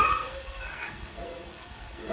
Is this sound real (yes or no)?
no